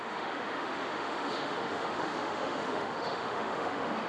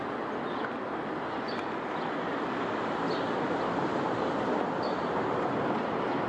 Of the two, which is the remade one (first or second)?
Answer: first